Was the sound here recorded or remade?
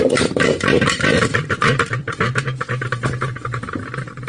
remade